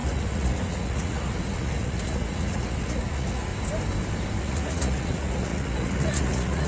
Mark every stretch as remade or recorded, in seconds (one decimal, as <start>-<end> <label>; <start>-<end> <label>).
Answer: 0.0-3.5 remade; 3.5-4.4 recorded; 4.4-6.7 remade

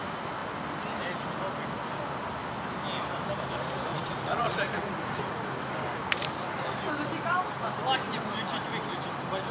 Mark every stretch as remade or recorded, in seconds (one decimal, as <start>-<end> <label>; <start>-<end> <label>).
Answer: 0.0-3.9 recorded; 3.9-5.4 remade; 5.4-9.5 recorded

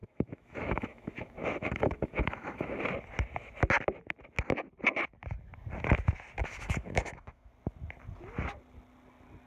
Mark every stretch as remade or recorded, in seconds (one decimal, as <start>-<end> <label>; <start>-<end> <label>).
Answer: 0.0-2.8 remade; 2.8-6.4 recorded; 6.4-7.5 remade; 7.5-9.5 recorded

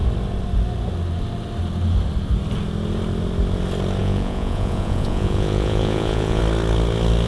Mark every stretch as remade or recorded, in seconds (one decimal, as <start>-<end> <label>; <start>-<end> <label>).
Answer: 0.0-4.0 recorded; 4.0-6.4 remade; 6.4-7.3 recorded

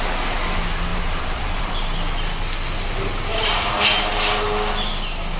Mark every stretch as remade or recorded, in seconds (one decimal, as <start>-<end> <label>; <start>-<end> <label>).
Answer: 0.0-0.9 recorded; 0.9-1.7 remade; 1.7-3.3 recorded; 3.3-4.2 remade; 4.2-5.4 recorded